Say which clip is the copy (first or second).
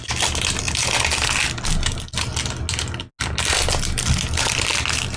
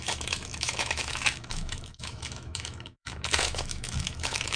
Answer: second